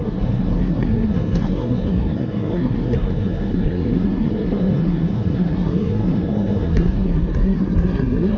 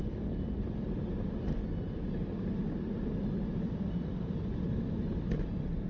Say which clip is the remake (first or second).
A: first